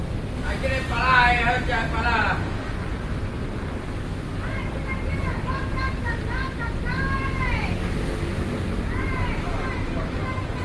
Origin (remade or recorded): recorded